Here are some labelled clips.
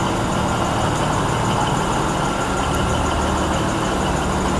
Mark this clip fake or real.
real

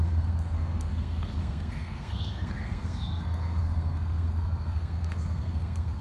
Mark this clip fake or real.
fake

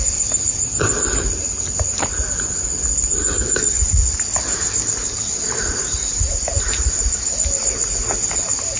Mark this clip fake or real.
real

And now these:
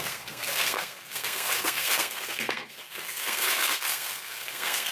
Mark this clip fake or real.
fake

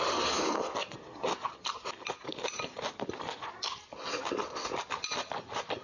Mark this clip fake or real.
real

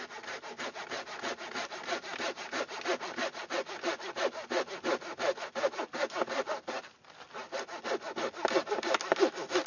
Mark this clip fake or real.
real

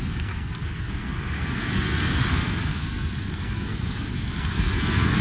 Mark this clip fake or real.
fake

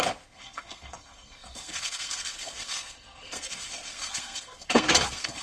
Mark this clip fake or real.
fake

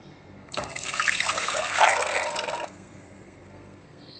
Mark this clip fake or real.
fake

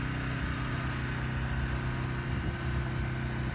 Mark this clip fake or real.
real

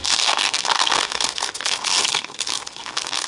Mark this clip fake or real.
fake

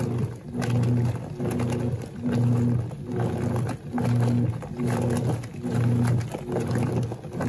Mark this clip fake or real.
real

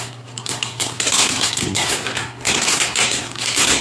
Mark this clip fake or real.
fake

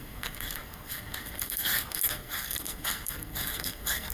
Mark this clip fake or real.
fake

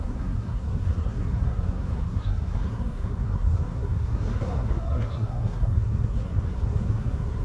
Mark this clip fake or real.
fake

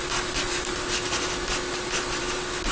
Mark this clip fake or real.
real